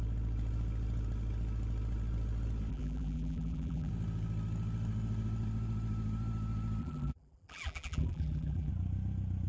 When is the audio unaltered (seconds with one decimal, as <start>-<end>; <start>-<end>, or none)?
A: 0.0-2.7; 3.9-6.8; 8.7-9.5